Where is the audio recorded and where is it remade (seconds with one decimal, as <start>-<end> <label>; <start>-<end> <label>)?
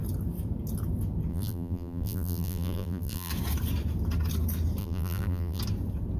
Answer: 0.0-1.3 recorded; 1.3-3.3 remade; 3.3-4.8 recorded; 4.8-5.6 remade; 5.6-6.2 recorded